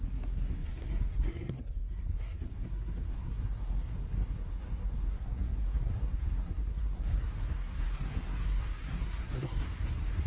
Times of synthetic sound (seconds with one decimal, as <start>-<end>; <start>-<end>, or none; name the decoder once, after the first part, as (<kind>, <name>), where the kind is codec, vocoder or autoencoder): 0.0-10.3 (codec, SNAC)